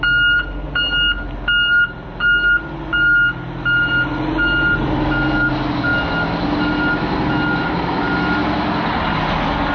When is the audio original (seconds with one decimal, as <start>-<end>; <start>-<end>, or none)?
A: 0.0-9.7

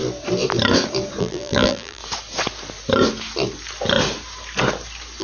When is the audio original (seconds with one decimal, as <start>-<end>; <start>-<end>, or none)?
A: 0.0-1.2; 2.0-5.2

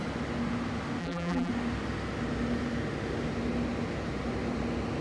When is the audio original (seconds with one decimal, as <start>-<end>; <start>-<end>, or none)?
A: 0.0-1.0; 1.5-5.0

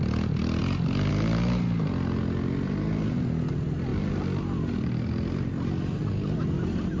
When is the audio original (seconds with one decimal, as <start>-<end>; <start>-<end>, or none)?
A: 0.0-7.0